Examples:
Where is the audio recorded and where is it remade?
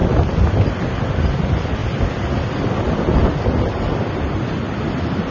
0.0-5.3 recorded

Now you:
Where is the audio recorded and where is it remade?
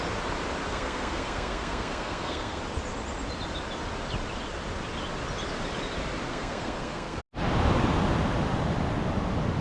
0.0-0.7 recorded; 0.7-2.6 remade; 2.6-6.3 recorded; 6.3-7.2 remade; 7.2-9.6 recorded